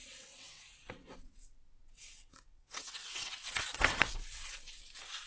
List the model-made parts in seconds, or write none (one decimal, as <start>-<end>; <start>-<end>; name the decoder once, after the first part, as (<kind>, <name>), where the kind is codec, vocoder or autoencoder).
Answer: 0.0-1.4 (vocoder, WaveNeXt); 1.8-4.8